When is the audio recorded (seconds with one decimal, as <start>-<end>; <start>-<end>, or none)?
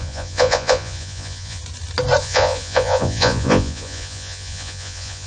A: 1.6-2.2